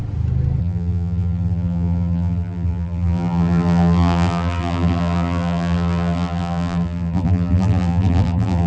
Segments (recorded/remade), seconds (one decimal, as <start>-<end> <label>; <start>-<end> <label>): 0.0-0.6 recorded; 0.6-8.7 remade